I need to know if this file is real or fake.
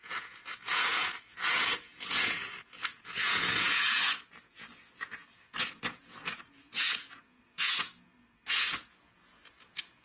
fake